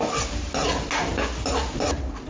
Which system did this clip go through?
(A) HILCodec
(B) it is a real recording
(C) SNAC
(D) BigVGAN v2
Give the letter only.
B